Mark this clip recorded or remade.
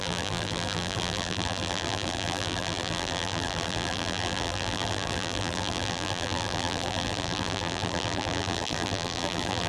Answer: remade